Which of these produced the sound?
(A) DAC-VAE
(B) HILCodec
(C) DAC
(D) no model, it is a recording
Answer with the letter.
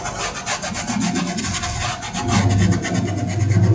D